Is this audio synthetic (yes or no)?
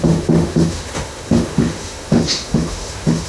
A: yes